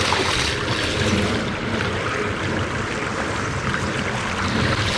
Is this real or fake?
real